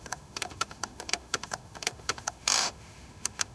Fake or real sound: fake